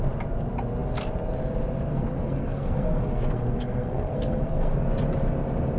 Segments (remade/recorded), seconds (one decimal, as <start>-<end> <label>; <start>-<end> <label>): 0.0-1.9 recorded; 1.9-4.8 remade; 4.8-5.8 recorded